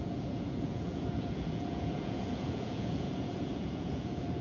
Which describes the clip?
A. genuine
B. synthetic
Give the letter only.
B